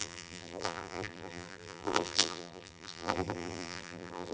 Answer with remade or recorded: remade